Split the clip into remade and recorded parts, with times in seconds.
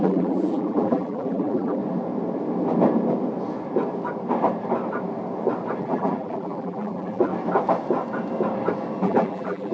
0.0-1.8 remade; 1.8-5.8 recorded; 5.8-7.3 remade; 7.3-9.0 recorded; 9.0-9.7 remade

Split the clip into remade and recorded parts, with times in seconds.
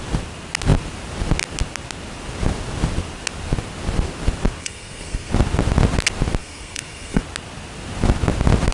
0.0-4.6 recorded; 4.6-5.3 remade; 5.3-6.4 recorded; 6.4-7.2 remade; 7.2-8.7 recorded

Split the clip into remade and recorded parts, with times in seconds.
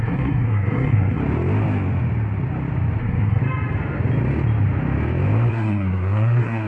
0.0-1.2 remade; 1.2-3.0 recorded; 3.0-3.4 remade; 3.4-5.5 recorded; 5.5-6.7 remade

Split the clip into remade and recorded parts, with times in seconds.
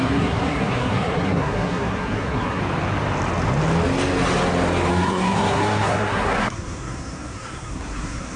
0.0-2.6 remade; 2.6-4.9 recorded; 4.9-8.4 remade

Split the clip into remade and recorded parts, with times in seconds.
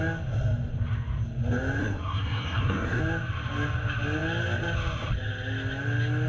0.0-1.8 recorded; 1.8-3.0 remade; 3.0-6.3 recorded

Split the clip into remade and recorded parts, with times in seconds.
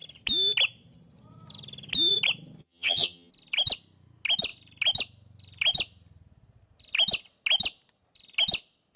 0.0-2.6 recorded; 2.6-3.3 remade; 3.3-9.0 recorded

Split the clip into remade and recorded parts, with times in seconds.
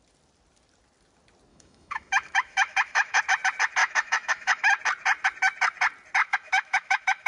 0.0-1.5 recorded; 1.5-3.2 remade; 3.2-3.8 recorded; 3.8-4.8 remade; 4.8-6.2 recorded; 6.2-7.3 remade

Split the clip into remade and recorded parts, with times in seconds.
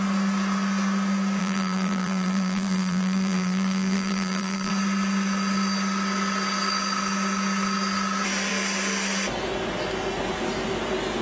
0.0-1.4 recorded; 1.4-4.7 remade; 4.7-11.2 recorded